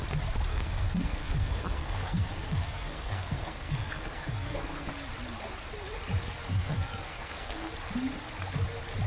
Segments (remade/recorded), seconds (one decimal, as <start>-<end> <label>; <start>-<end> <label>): 0.0-0.5 recorded; 0.5-4.9 remade; 4.9-6.5 recorded; 6.5-7.7 remade; 7.7-9.1 recorded